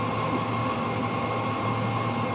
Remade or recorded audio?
recorded